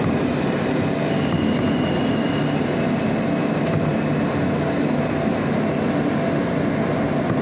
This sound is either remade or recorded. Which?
recorded